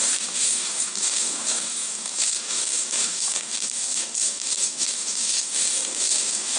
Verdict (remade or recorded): remade